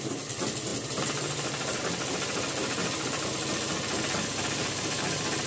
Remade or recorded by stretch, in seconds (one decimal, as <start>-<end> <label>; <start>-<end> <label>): 0.0-5.5 recorded